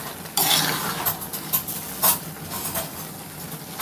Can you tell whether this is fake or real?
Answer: real